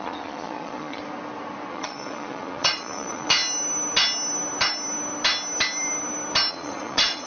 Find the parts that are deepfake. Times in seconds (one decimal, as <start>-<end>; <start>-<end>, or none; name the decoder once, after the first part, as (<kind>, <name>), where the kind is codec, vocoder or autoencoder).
0.0-1.0 (vocoder, Vocos); 1.7-3.4; 6.5-7.3

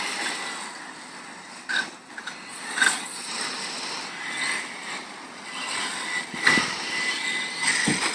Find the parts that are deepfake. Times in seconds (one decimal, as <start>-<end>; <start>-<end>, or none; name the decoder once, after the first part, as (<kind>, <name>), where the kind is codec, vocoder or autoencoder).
2.5-3.3 (vocoder, Vocos)

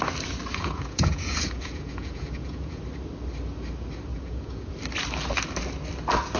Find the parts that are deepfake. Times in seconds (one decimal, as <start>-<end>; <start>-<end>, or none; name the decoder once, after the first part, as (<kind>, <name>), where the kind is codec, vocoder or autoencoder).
0.5-2.8 (vocoder, Vocos); 4.1-4.7

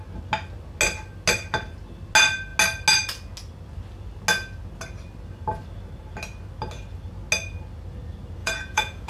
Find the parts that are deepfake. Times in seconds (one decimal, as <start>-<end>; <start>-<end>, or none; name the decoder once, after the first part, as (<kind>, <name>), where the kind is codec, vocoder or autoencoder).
8.4-9.1 (vocoder, Vocos)

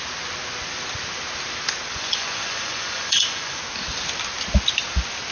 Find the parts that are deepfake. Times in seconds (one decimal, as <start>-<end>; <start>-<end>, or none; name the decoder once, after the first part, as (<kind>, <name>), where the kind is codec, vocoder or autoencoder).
1.9-3.6 (vocoder, Vocos)